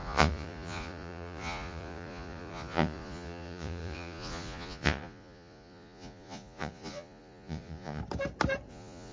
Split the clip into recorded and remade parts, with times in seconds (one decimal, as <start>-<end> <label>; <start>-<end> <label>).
0.0-8.0 remade; 8.0-8.7 recorded; 8.7-9.1 remade